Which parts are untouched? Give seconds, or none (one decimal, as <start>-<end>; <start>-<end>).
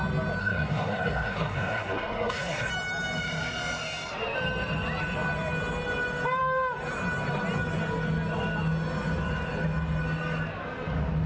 0.0-0.4; 2.7-11.3